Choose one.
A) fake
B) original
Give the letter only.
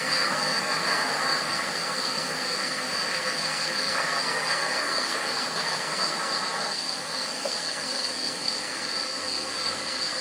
A